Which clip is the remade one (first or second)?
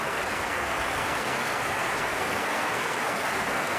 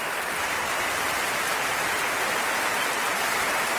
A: first